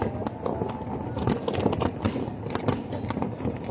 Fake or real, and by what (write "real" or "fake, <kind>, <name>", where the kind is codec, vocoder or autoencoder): real